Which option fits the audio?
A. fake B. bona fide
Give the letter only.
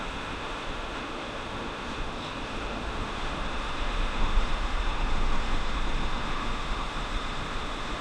A